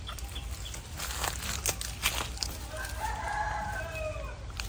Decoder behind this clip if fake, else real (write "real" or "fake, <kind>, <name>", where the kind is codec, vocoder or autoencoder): real